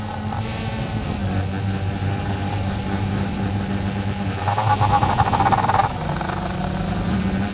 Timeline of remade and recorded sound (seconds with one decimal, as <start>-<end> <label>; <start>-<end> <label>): 0.0-7.5 recorded